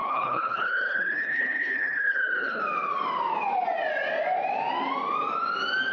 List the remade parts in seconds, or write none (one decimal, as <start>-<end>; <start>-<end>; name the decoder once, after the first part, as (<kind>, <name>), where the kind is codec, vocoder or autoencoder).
0.0-2.6 (codec, HILCodec)